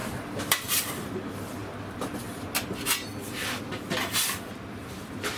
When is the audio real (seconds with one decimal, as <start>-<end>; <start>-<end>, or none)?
0.8-5.4